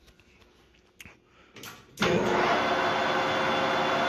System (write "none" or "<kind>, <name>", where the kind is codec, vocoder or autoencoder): none